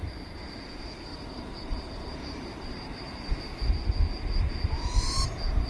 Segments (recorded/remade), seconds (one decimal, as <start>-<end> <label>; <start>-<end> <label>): 0.0-1.1 recorded; 1.1-3.7 remade; 3.7-5.7 recorded